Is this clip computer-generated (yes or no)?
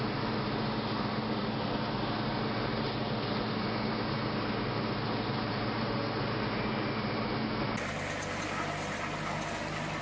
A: no